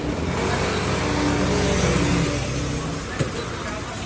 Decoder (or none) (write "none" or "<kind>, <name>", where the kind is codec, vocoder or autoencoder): none